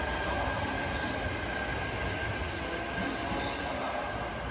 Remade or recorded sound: recorded